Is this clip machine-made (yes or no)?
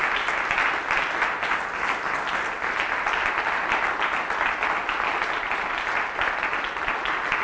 no